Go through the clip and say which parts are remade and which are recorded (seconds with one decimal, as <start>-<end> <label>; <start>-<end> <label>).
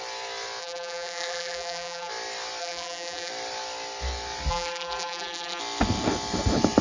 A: 0.0-0.6 recorded; 0.6-2.1 remade; 2.1-2.6 recorded; 2.6-3.3 remade; 3.3-4.5 recorded; 4.5-5.6 remade; 5.6-6.8 recorded